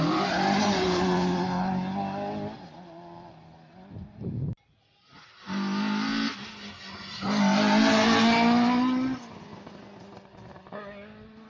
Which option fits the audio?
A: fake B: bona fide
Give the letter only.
B